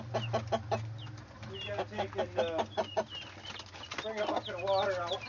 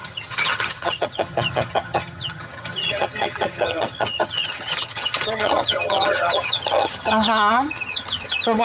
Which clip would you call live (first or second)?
first